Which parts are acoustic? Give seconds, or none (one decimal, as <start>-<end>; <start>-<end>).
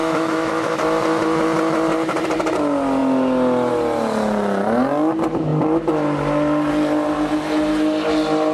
0.7-8.5